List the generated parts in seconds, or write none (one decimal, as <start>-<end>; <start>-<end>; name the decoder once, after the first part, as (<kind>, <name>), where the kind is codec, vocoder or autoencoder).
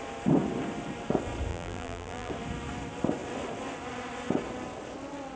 1.5-2.3 (vocoder, BigVGAN v2)